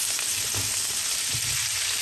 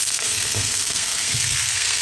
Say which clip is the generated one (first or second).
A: second